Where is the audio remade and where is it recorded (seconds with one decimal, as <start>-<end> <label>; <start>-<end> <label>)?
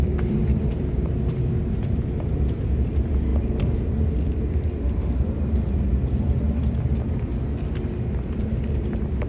0.0-3.3 remade; 3.3-6.2 recorded; 6.2-7.3 remade; 7.3-8.4 recorded; 8.4-9.3 remade